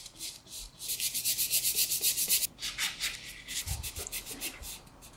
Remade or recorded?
recorded